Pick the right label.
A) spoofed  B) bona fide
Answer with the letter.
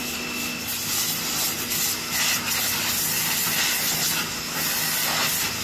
B